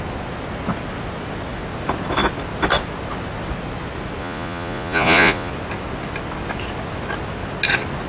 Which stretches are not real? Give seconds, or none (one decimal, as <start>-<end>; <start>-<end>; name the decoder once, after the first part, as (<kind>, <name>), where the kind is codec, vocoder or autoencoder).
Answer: 4.2-5.5 (vocoder, Vocos)